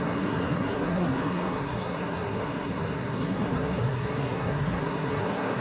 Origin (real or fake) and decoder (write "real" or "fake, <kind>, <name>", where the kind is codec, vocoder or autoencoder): fake, codec, SNAC